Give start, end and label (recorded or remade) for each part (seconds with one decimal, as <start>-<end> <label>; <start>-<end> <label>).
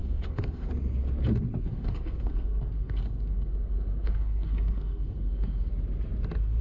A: 0.0-0.7 remade; 0.7-1.7 recorded; 1.7-5.7 remade; 5.7-6.6 recorded